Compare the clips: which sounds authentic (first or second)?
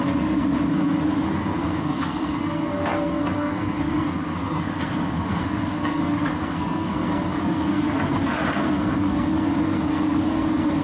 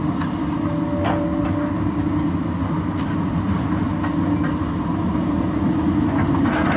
second